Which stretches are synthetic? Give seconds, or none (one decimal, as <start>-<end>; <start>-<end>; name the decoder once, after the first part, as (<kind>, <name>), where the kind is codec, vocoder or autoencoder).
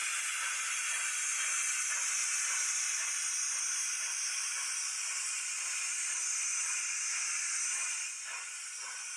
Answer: 2.2-5.9 (vocoder, BigVGAN v2)